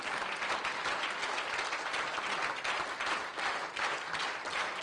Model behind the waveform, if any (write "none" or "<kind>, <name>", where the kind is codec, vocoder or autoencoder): none